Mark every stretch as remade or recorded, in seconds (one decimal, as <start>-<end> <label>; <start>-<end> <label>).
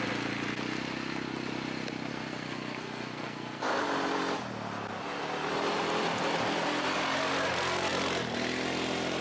0.0-2.1 recorded; 2.1-3.7 remade; 3.7-9.2 recorded